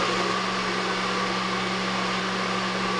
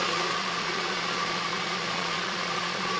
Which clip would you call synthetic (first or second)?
second